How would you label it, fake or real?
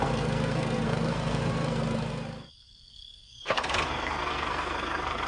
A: fake